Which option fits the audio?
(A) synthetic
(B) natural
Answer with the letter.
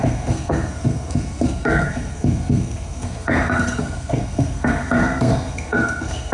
A